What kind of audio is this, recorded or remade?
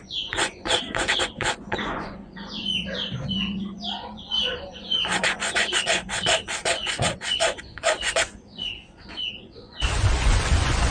remade